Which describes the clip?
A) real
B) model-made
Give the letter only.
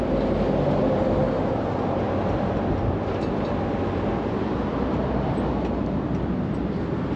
A